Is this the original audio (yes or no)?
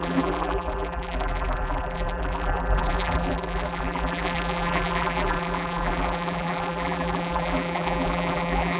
no